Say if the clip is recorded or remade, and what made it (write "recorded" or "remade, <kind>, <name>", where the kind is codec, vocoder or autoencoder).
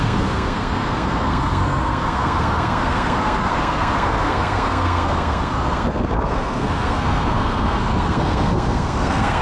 remade, codec, SNAC